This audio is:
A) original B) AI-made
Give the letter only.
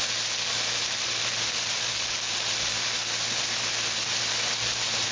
A